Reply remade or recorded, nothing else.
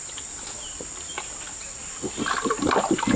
recorded